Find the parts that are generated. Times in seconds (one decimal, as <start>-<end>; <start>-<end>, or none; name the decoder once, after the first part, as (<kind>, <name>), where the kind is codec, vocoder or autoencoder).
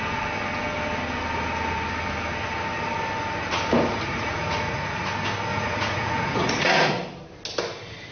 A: 3.9-5.1 (vocoder, Vocos); 5.5-6.7